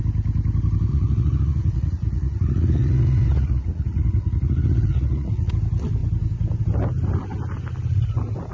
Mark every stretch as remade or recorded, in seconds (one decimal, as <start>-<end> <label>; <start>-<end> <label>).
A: 0.0-0.9 recorded; 0.9-5.5 remade; 5.5-8.5 recorded